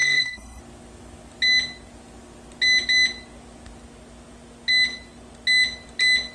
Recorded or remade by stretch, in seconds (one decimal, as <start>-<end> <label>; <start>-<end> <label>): 0.0-0.6 remade; 0.6-6.3 recorded